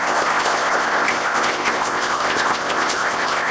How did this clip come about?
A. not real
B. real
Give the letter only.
A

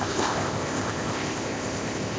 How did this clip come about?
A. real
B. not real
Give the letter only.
B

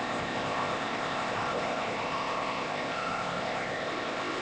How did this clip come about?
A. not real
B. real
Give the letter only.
A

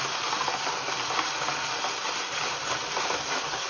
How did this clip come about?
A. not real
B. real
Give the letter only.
B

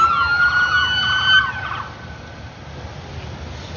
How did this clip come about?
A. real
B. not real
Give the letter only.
A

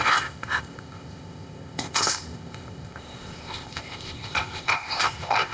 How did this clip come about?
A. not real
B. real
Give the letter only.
A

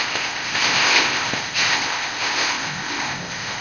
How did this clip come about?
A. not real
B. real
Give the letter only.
A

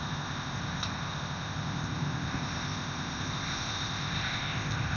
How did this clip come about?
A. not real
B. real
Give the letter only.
A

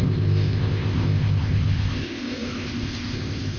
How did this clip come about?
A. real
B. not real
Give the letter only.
B